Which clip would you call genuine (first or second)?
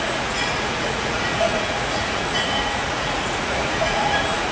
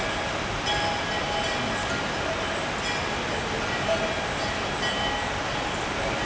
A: second